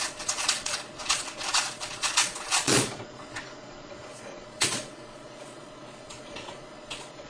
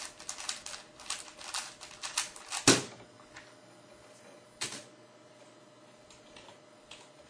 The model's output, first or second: first